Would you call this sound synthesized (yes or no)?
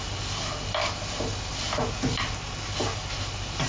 no